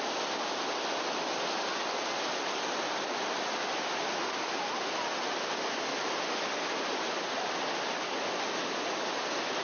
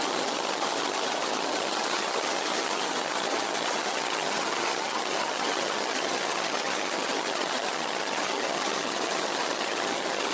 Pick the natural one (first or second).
first